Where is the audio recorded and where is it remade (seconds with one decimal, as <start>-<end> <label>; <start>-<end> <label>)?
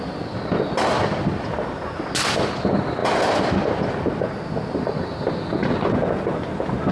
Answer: 0.0-6.9 recorded